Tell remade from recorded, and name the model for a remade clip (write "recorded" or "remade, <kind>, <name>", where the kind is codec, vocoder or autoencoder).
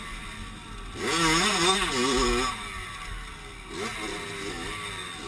recorded